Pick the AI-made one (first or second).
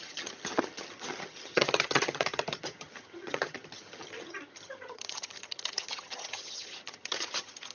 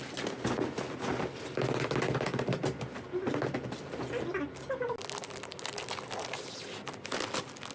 first